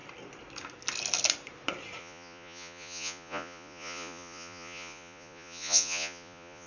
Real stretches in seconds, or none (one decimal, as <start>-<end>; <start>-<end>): 0.0-2.0

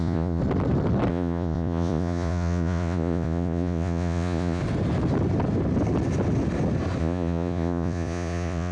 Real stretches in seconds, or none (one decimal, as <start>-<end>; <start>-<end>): 0.4-1.1; 4.6-7.0

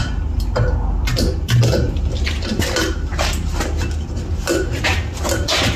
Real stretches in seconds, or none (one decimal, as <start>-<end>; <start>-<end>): 0.0-5.8

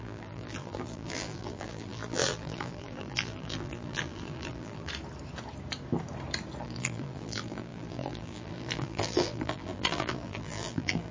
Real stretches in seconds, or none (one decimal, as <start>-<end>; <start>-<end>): 4.9-6.6

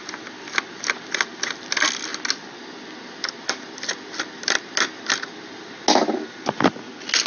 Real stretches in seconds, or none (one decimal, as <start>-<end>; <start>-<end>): 0.0-7.3

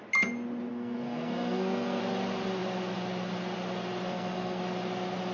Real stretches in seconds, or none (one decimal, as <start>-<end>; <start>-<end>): 0.0-0.7; 2.0-4.1; 4.6-5.3

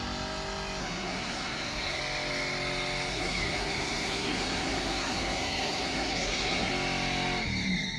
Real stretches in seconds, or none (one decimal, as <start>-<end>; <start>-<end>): 0.0-0.8; 2.0-3.1; 6.7-8.0